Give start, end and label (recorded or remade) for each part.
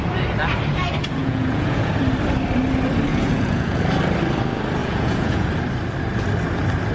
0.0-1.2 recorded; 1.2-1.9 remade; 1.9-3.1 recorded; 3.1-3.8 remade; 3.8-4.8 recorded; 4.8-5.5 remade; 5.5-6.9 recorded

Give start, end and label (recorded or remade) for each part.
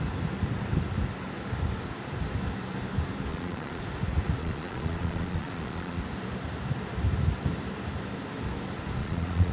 0.0-3.3 recorded; 3.3-3.8 remade; 3.8-4.4 recorded; 4.4-6.0 remade; 6.0-9.0 recorded; 9.0-9.5 remade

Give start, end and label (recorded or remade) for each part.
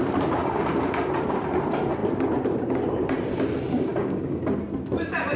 0.0-0.4 recorded; 0.4-1.1 remade; 1.1-3.9 recorded; 3.9-4.4 remade; 4.4-5.4 recorded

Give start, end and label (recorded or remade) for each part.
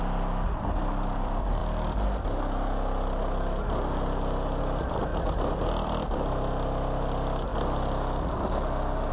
0.0-1.6 remade; 1.6-4.6 recorded; 4.6-7.5 remade; 7.5-9.1 recorded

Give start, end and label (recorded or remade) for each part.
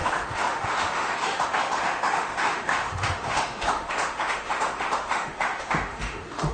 0.0-6.5 remade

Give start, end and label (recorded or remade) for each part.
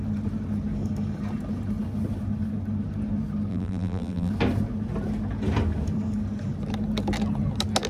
0.0-3.5 recorded; 3.5-4.3 remade; 4.3-7.9 recorded